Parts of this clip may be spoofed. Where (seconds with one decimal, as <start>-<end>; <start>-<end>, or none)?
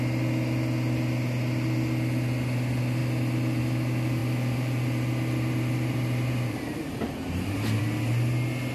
4.2-7.8